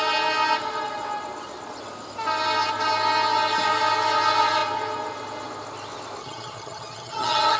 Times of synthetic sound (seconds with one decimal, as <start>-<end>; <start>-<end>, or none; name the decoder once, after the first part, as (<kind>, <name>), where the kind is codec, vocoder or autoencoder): 6.2-7.6 (vocoder, HiFi-GAN)